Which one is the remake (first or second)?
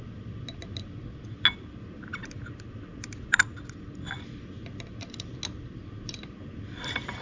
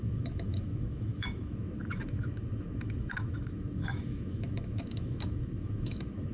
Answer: second